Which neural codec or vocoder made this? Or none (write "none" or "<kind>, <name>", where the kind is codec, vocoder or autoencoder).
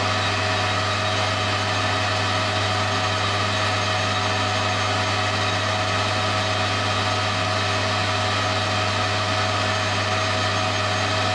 none